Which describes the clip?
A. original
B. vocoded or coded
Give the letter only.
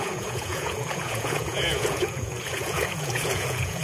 B